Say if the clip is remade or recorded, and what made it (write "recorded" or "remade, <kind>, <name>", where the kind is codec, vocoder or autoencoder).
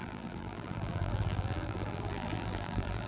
remade, vocoder, BigVGAN v2